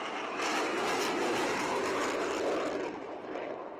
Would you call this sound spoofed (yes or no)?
no